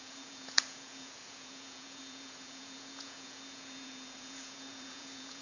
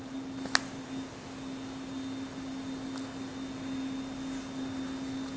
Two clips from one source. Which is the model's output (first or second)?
first